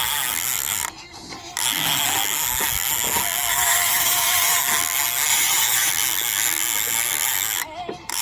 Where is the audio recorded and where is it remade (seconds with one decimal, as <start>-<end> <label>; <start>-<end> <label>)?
0.0-3.5 recorded; 3.5-4.6 remade; 4.6-5.3 recorded; 5.3-5.9 remade; 5.9-8.2 recorded

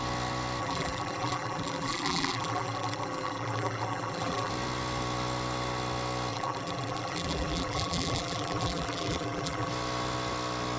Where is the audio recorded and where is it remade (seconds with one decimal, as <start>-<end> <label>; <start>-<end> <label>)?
0.0-0.6 recorded; 0.6-4.5 remade; 4.5-6.3 recorded; 6.3-9.7 remade; 9.7-10.8 recorded

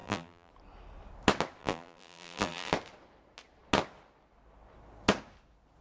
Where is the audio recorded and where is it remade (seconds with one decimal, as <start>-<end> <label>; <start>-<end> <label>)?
0.0-0.5 remade; 0.5-1.6 recorded; 1.6-2.7 remade; 2.7-5.8 recorded

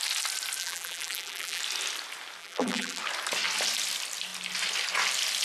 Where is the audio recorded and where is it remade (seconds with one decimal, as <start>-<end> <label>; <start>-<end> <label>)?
0.0-0.6 recorded; 0.6-1.6 remade; 1.6-2.4 recorded; 2.4-3.0 remade; 3.0-5.4 recorded

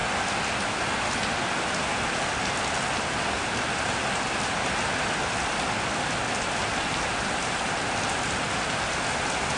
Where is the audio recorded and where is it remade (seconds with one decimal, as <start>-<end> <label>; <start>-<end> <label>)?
0.0-9.6 recorded

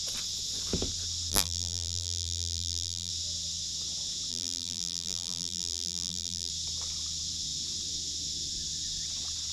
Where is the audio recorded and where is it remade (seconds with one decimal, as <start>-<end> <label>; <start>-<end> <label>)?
0.0-1.3 recorded; 1.3-3.1 remade; 3.1-4.3 recorded; 4.3-6.5 remade; 6.5-9.5 recorded